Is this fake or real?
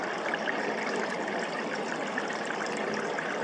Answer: real